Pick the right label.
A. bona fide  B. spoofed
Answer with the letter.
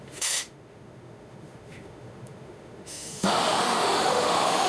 B